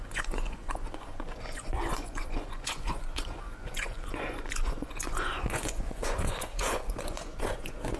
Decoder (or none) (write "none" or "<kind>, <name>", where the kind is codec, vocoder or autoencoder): vocoder, Vocos